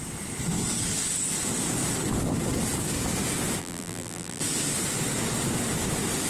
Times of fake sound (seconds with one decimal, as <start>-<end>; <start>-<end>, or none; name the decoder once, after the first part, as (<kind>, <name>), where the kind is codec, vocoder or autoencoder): 3.6-4.4 (vocoder, BigVGAN v2)